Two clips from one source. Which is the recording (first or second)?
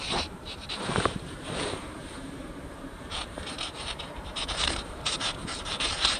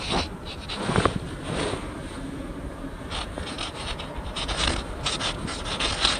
second